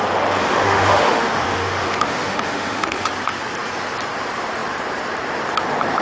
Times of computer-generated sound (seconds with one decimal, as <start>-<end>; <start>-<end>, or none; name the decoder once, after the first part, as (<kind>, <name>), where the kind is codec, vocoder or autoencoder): 0.4-3.1 (autoencoder, DAC-VAE)